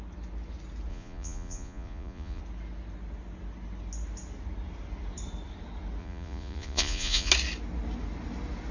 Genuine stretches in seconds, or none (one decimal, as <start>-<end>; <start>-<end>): 0.0-0.9; 2.4-6.0; 7.3-8.7